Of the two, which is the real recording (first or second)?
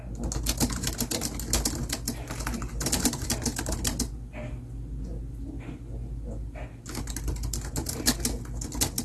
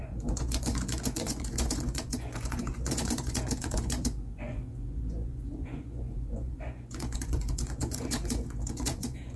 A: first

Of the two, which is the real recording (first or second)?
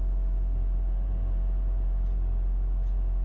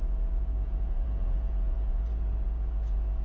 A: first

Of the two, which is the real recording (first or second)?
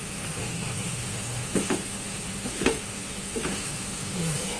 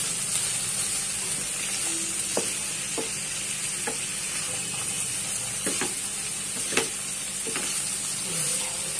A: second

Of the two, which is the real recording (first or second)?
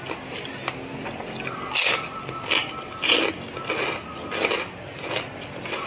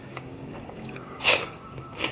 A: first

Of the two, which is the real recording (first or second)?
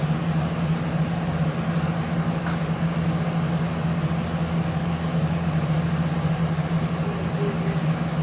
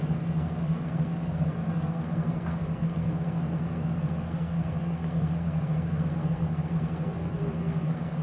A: first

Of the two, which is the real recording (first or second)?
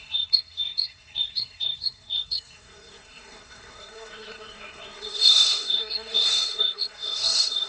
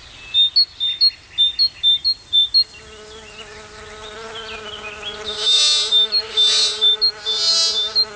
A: second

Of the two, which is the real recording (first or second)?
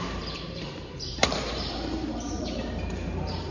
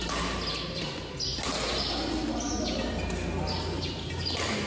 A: second